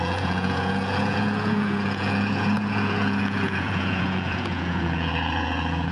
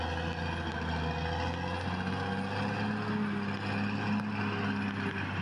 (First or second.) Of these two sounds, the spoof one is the first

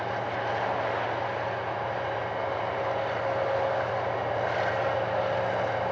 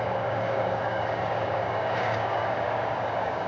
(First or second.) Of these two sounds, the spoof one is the second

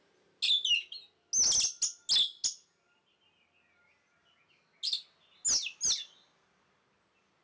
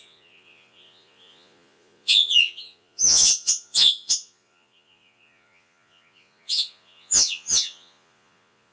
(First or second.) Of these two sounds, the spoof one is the second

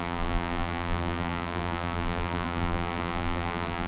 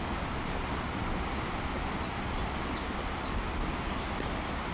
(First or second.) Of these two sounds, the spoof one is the first